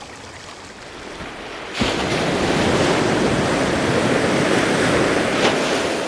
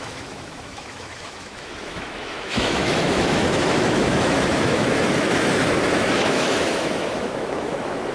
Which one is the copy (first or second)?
second